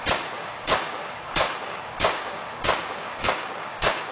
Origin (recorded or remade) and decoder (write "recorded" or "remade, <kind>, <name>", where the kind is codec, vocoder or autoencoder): remade, codec, DAC